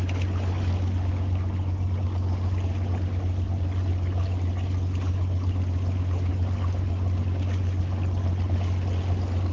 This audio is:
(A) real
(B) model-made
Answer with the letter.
A